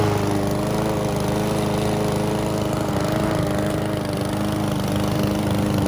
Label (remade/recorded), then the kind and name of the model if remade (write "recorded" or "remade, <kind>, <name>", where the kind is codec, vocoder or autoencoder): recorded